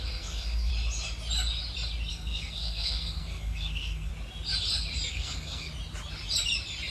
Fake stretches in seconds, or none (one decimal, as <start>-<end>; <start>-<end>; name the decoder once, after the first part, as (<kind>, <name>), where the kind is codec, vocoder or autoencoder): 0.0-0.7 (codec, SNAC); 2.1-4.1; 5.1-5.7

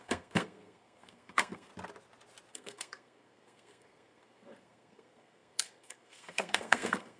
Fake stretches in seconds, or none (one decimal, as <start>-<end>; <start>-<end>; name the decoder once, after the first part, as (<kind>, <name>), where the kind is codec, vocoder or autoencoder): 0.0-1.7 (codec, SNAC); 2.5-7.2

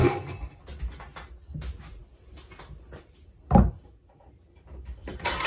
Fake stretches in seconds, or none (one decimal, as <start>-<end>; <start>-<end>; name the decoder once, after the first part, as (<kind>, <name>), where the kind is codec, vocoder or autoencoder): 0.0-0.6 (codec, SNAC)

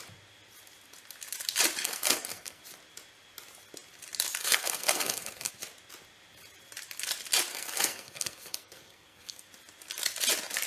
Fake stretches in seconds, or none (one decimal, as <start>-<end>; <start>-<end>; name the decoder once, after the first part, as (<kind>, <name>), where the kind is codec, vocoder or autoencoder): 1.8-2.6 (codec, SNAC); 4.4-5.5; 7.5-9.5

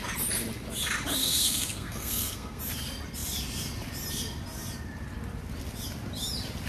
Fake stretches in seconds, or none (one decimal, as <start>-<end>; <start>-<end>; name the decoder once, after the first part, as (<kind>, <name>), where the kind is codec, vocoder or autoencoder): 1.2-2.6 (codec, SNAC)

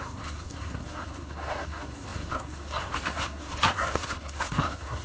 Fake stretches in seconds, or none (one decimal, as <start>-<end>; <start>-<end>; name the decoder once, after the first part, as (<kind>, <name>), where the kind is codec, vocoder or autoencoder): 0.0-5.0 (codec, SNAC)

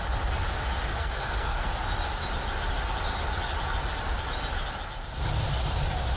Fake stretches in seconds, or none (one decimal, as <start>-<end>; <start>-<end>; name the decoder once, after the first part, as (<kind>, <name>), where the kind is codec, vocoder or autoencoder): 0.9-1.8 (codec, SNAC)

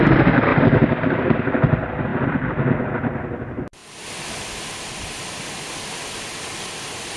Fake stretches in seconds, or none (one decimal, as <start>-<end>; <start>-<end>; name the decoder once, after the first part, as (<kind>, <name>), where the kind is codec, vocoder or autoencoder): none